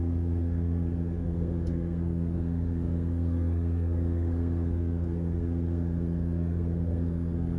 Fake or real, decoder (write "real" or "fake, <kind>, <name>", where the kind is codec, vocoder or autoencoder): fake, codec, SNAC